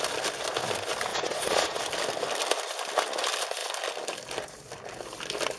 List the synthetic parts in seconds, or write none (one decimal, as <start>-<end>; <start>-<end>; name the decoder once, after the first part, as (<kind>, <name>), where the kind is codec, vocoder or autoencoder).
1.1-1.8 (vocoder, Vocos)